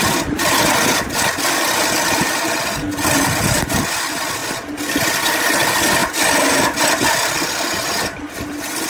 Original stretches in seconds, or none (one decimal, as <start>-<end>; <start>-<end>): 0.0-8.9